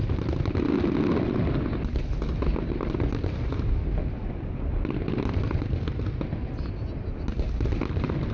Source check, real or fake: real